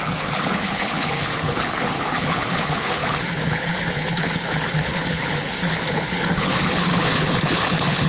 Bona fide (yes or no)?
no